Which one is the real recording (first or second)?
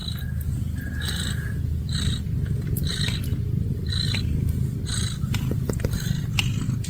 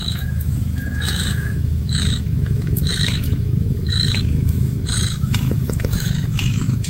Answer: first